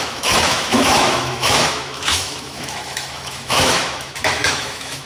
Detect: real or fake fake